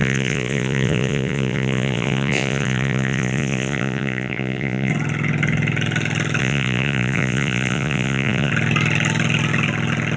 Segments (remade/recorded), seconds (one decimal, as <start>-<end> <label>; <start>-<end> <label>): 0.0-4.9 remade; 4.9-6.4 recorded; 6.4-8.5 remade; 8.5-10.2 recorded